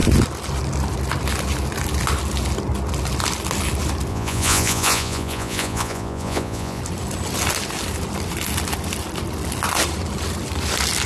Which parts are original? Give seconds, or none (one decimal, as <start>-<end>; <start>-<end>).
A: 0.0-4.1; 6.8-11.1